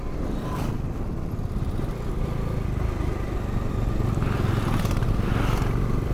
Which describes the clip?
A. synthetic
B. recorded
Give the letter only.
B